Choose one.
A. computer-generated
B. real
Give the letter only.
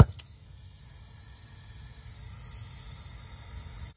B